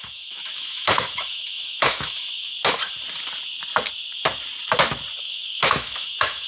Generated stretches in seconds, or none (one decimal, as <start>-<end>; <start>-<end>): 0.0-2.5; 5.2-6.5